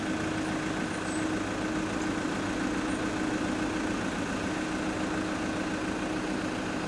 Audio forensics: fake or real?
real